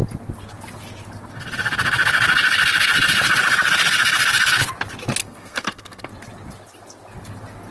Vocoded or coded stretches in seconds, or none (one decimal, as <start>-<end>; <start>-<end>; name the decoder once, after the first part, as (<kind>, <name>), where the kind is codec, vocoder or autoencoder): 5.2-6.1 (codec, SNAC)